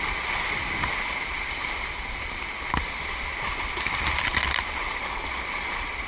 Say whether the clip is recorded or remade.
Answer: recorded